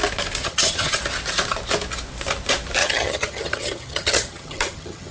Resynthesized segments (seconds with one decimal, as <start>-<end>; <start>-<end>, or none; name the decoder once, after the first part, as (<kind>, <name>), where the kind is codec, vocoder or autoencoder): 0.4-1.0 (vocoder, HiFi-GAN); 2.8-5.1